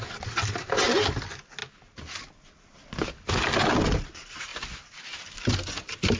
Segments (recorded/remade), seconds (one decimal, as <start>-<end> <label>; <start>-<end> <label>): 0.0-6.2 recorded